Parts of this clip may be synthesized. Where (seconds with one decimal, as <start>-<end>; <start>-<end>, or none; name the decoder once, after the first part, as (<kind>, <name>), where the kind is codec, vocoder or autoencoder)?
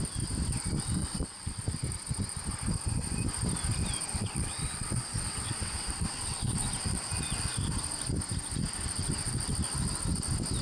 1.0-1.6 (vocoder, WaveNeXt); 4.1-7.1